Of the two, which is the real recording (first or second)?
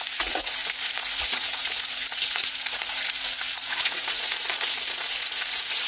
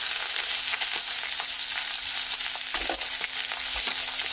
second